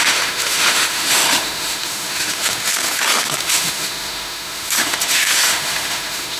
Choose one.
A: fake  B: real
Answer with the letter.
A